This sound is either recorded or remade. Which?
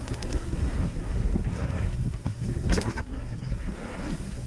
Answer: remade